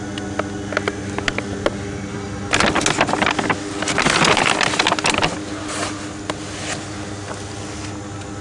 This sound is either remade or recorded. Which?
recorded